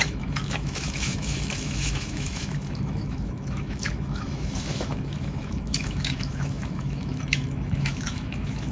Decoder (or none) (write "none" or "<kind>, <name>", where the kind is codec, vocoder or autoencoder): autoencoder, DAC-VAE